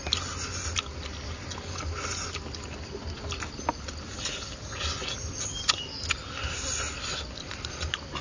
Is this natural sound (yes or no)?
yes